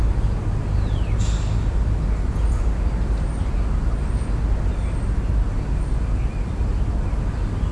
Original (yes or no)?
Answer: yes